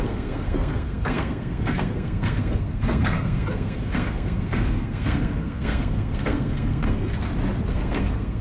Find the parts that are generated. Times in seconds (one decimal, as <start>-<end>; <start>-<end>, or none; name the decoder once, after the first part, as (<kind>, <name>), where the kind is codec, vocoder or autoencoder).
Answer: 0.0-7.1 (codec, SNAC); 7.7-8.4